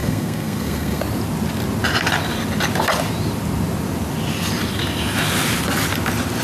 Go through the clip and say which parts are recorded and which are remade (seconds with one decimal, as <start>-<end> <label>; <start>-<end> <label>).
0.0-1.0 remade; 1.0-6.4 recorded